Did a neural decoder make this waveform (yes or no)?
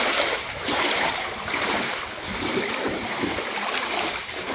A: no